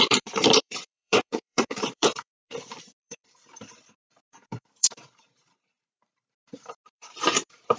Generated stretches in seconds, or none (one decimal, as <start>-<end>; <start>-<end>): 0.0-7.8